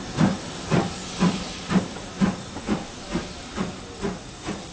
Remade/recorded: recorded